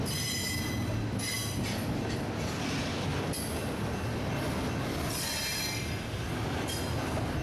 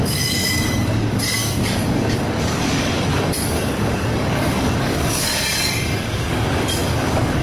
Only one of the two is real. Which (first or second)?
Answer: first